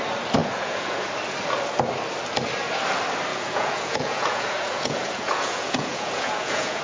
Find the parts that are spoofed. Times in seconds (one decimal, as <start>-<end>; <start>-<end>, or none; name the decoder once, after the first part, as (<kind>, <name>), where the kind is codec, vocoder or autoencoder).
0.4-1.1 (vocoder, Vocos); 3.3-6.8